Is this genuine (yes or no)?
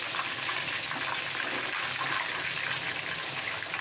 yes